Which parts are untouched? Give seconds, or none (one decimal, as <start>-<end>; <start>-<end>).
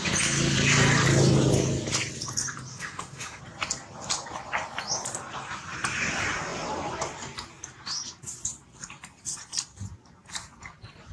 0.0-2.7; 3.4-11.1